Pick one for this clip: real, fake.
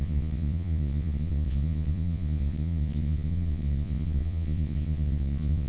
fake